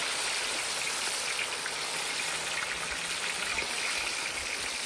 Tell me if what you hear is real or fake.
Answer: real